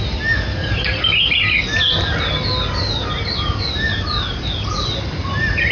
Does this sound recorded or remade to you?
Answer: recorded